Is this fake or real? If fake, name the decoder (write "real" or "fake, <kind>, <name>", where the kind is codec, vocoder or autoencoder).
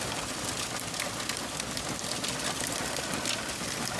real